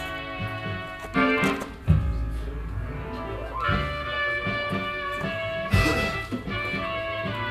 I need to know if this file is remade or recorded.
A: recorded